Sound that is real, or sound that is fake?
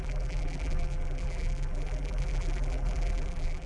fake